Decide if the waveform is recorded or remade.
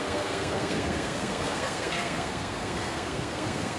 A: remade